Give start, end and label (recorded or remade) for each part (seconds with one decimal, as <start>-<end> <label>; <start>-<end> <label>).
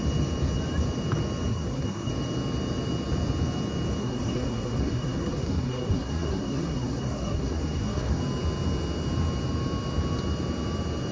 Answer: 0.0-1.5 recorded; 1.5-2.1 remade; 2.1-4.0 recorded; 4.0-8.2 remade; 8.2-11.1 recorded